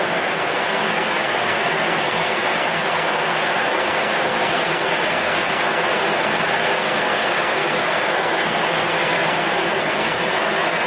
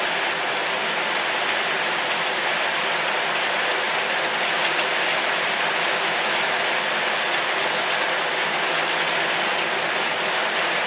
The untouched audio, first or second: second